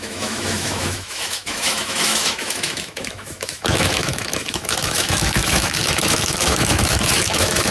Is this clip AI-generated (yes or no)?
yes